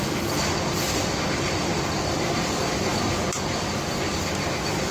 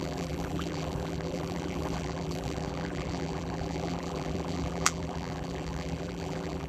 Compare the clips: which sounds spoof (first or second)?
second